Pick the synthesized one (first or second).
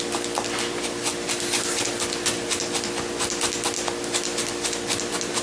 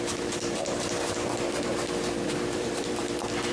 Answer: second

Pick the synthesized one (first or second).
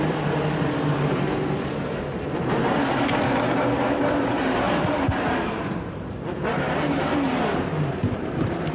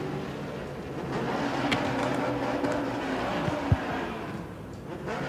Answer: first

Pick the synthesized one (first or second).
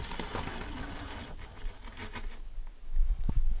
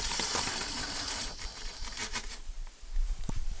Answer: second